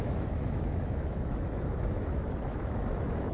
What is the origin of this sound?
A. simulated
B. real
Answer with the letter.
A